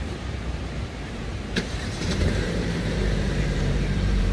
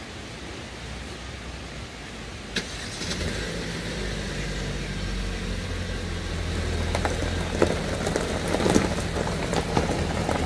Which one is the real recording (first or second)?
second